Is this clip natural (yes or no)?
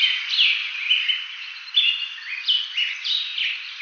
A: no